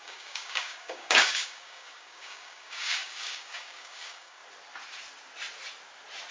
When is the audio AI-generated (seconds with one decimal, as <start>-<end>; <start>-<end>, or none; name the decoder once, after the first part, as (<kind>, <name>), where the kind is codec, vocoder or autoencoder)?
0.0-4.4 (codec, DAC)